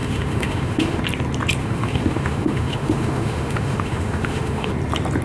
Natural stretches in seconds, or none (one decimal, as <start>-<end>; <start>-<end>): 1.0-1.6; 4.7-5.2